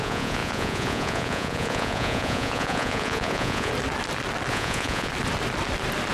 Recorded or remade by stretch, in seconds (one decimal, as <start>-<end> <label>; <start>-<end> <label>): 0.0-3.7 remade; 3.7-4.5 recorded; 4.5-5.1 remade; 5.1-6.1 recorded